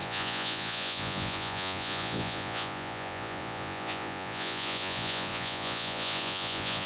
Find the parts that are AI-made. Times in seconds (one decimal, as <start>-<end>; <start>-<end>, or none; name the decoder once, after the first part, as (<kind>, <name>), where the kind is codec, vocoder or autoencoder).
0.0-6.9 (vocoder, Vocos)

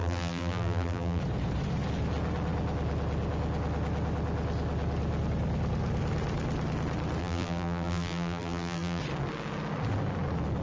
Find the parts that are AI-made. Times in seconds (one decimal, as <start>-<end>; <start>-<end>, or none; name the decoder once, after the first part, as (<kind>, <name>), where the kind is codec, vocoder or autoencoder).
0.0-1.2 (vocoder, BigVGAN v2); 7.2-9.0